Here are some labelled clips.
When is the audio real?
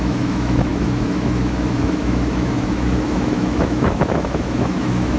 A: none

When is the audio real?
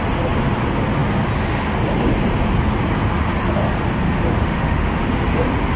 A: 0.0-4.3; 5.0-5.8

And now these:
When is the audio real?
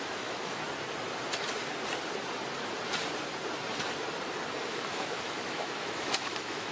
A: 0.6-4.6